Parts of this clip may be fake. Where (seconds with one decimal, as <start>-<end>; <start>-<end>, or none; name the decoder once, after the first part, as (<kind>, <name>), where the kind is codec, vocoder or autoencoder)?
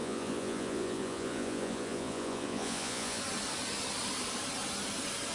0.0-3.2 (vocoder, Vocos)